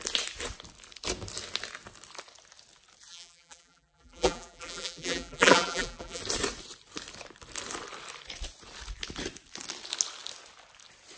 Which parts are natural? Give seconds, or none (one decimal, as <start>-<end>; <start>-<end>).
0.0-3.1; 6.2-11.2